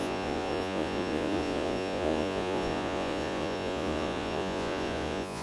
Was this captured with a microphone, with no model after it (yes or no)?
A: no